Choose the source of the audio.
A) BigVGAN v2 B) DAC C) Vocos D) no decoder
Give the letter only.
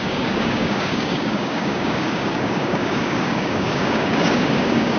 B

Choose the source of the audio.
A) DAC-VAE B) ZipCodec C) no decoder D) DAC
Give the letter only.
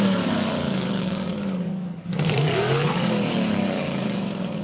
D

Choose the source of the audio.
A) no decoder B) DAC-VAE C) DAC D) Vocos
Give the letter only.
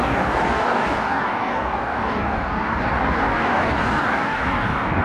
C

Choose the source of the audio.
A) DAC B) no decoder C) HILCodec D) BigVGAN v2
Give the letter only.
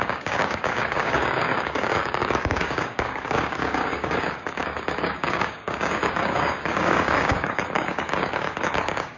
A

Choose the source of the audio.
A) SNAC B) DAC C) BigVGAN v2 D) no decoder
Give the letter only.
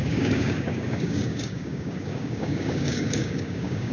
B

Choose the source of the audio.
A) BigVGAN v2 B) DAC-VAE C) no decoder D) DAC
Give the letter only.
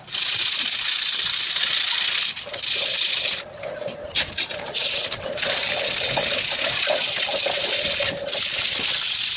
C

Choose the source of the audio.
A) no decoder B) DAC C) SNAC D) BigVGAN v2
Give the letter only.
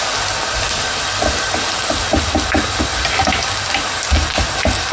A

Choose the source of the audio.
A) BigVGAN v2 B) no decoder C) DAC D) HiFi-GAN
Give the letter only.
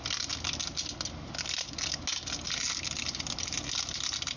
B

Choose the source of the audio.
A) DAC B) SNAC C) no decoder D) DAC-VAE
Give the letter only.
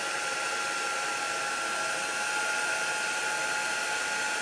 C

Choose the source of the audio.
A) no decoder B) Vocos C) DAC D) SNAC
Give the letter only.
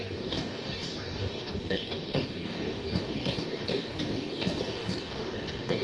C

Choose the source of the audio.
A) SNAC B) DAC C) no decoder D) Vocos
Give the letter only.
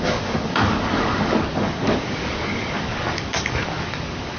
B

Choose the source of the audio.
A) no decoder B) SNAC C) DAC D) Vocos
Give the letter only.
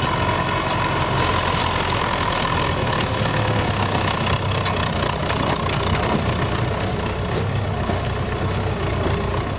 A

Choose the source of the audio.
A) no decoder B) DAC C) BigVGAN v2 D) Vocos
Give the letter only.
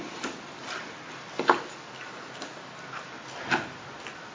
A